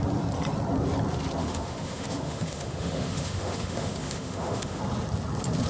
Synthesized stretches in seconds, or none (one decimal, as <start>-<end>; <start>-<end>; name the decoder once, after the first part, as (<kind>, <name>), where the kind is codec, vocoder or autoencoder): 1.4-4.8 (autoencoder, DAC-VAE)